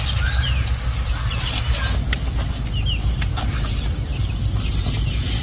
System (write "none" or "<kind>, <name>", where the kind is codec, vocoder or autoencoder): none